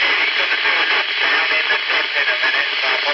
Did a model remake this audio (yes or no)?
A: no